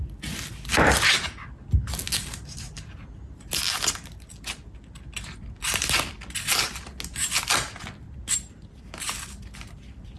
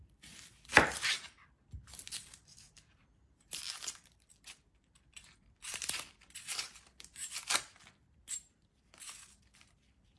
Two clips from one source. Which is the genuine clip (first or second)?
first